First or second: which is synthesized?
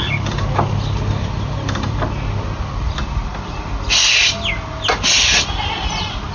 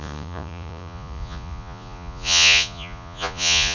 second